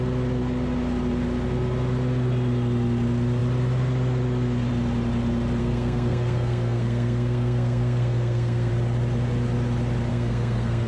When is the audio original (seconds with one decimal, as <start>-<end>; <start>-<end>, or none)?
0.0-5.6; 8.7-10.1